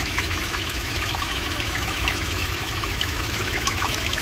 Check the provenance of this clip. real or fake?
fake